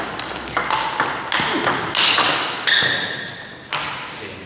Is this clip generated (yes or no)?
no